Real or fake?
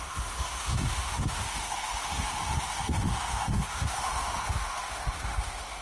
fake